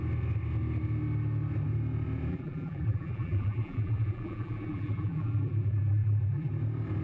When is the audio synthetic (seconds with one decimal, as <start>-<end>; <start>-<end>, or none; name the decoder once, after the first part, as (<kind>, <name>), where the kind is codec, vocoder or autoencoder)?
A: 2.3-6.5 (vocoder, BigVGAN v2)